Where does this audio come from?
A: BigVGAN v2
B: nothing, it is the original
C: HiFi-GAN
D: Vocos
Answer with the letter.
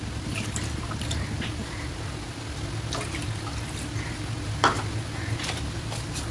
B